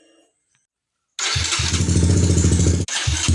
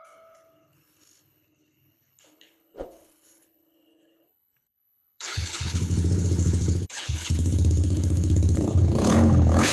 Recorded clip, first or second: first